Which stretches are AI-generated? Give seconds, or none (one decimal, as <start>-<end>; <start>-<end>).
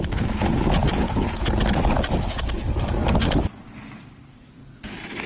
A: none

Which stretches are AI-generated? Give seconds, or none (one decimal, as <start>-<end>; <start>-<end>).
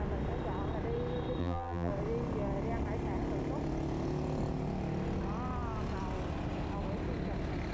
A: 1.4-1.9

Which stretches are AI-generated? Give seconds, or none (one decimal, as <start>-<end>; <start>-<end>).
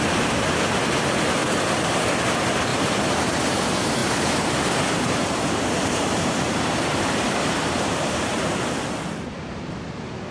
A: 1.4-2.1; 2.7-3.6; 4.0-8.7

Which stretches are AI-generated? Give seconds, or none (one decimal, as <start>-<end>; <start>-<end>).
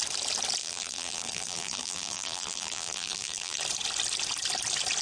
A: 0.6-3.6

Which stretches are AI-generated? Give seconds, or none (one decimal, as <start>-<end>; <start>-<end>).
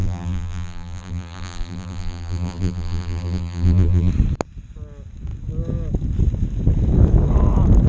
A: 0.0-4.1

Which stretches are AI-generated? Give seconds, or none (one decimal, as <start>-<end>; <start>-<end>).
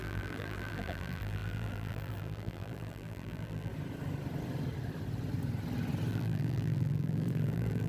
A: 0.0-3.7; 6.1-7.9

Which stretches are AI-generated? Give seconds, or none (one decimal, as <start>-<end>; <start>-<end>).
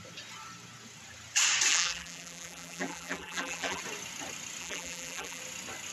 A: 1.7-3.8; 4.6-5.4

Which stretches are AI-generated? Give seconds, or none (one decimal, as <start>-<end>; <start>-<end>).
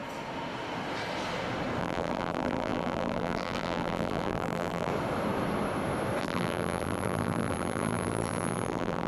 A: 1.8-4.9; 6.2-9.1